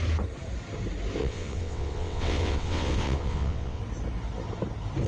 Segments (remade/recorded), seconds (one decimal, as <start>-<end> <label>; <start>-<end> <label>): 0.0-1.2 recorded; 1.2-3.8 remade; 3.8-5.1 recorded